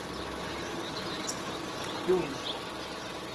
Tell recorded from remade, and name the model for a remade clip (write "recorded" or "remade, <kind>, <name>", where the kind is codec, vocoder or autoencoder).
recorded